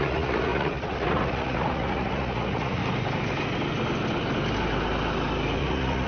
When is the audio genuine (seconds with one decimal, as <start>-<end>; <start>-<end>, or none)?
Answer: 2.8-5.6